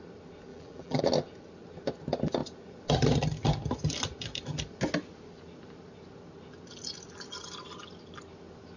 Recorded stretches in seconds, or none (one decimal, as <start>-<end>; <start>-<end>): 0.0-0.5; 1.0-8.8